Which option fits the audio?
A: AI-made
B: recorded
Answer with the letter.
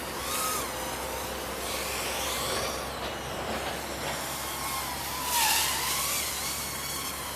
B